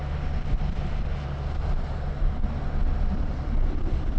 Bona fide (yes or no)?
yes